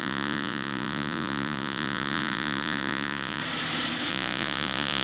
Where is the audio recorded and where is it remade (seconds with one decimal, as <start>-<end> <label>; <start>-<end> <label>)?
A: 0.0-3.4 remade; 3.4-4.1 recorded; 4.1-5.0 remade